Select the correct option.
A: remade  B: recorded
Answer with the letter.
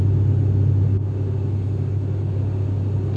B